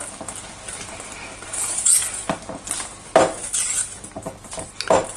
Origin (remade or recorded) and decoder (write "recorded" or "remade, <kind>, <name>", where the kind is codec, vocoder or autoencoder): recorded